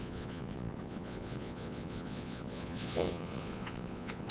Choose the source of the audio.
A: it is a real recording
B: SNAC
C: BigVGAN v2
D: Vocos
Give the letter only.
D